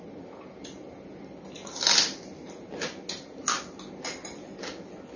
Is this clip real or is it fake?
real